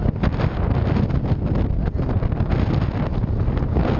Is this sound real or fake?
real